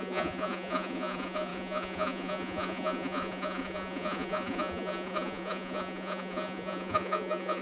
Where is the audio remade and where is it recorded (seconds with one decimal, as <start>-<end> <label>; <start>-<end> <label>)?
0.0-7.6 remade